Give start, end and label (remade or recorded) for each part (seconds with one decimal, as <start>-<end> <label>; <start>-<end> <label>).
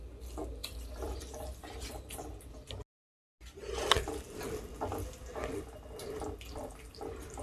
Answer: 0.0-0.6 recorded; 0.6-1.2 remade; 1.2-7.4 recorded